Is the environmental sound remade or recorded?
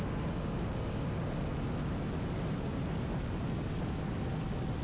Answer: recorded